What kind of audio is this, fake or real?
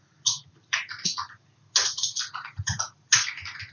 real